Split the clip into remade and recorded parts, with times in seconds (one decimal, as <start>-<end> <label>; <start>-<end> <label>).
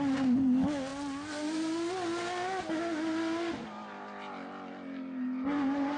0.0-6.0 recorded